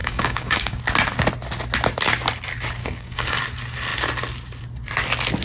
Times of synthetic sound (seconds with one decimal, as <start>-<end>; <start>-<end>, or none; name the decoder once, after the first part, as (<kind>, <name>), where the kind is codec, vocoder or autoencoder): 0.0-0.8 (codec, DAC); 2.8-3.4